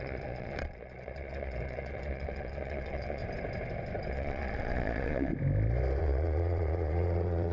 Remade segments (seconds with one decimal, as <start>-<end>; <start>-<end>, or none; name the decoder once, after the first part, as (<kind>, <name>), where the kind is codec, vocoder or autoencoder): 0.0-3.2 (vocoder, Vocos); 4.1-5.3; 6.0-7.5